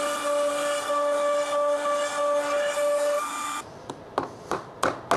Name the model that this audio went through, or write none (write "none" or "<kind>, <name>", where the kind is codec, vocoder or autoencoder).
none